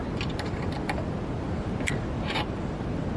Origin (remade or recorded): recorded